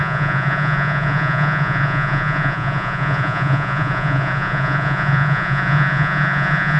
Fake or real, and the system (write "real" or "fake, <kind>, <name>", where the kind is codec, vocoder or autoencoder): fake, vocoder, Vocos